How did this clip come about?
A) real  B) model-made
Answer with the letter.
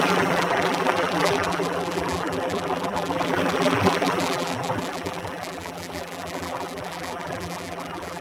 B